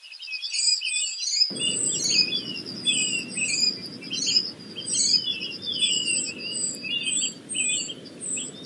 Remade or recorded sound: recorded